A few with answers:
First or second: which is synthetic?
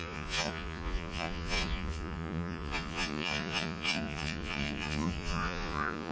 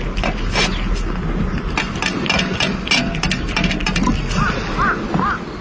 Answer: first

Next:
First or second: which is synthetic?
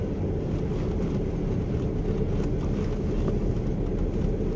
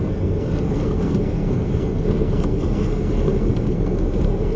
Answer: second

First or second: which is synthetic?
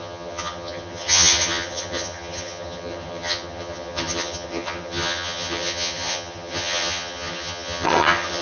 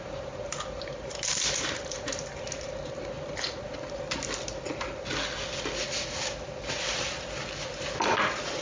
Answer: first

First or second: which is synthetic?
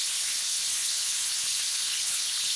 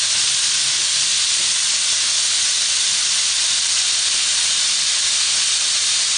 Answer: first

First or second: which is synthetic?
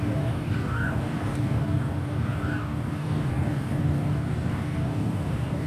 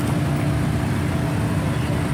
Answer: first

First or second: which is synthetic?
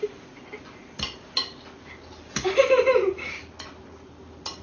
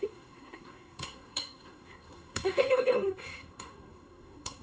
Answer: second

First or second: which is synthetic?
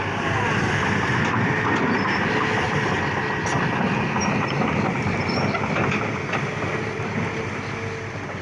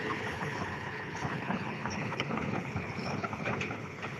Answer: second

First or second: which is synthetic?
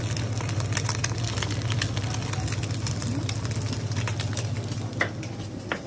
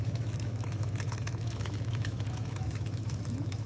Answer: second